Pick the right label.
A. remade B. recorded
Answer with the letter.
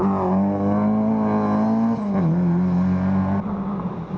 B